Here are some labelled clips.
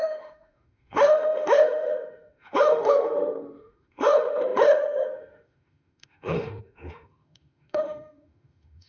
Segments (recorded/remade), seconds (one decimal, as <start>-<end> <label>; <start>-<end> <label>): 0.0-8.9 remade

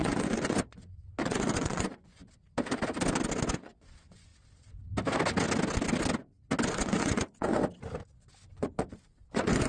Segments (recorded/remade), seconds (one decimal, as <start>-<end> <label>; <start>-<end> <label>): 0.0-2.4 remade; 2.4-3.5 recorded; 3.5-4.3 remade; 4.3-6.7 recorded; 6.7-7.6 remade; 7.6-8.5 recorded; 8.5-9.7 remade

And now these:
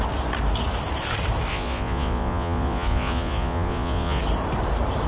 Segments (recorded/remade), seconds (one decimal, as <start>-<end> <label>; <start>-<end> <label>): 0.0-1.5 recorded; 1.5-4.2 remade; 4.2-5.1 recorded

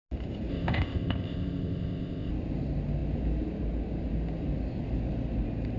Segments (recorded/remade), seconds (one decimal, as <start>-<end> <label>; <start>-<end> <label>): 0.0-0.5 recorded; 0.5-2.3 remade; 2.3-5.8 recorded

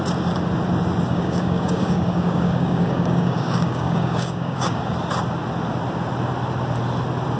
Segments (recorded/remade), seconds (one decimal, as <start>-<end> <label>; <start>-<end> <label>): 0.0-1.1 recorded; 1.1-4.8 remade; 4.8-7.4 recorded

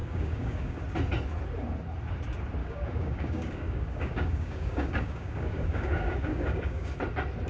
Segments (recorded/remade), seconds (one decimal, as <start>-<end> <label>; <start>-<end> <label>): 0.0-0.8 remade; 0.8-2.6 recorded; 2.6-6.9 remade; 6.9-7.5 recorded